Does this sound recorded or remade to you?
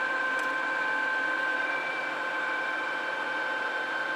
remade